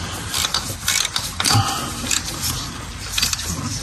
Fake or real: real